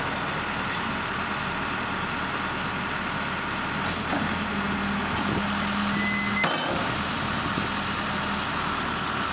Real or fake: real